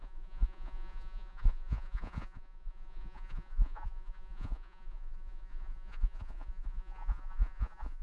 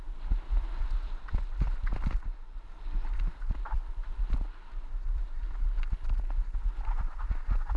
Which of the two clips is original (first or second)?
second